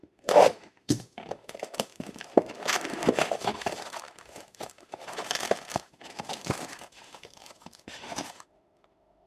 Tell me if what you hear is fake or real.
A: fake